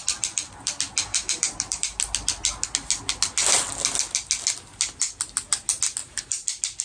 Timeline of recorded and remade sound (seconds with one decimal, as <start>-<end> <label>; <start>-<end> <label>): 0.0-1.1 recorded; 1.1-2.0 remade; 2.0-6.0 recorded; 6.0-6.8 remade